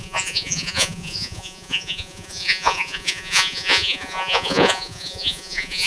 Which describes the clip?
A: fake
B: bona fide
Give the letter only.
A